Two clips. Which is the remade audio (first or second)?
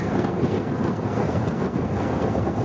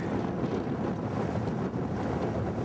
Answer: first